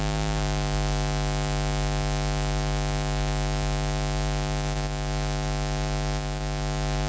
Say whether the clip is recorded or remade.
remade